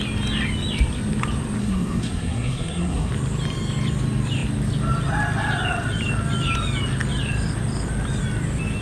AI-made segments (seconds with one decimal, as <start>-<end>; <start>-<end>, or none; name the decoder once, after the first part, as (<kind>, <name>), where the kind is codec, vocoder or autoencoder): 1.6-3.1 (codec, SNAC)

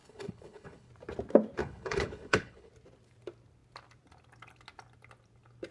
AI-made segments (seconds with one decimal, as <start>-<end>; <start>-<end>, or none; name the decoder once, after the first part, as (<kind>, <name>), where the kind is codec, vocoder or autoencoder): 0.0-0.9 (codec, HILCodec); 1.6-2.7